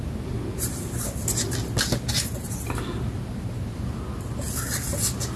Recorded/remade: recorded